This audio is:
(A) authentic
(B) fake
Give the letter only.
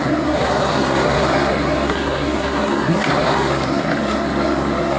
B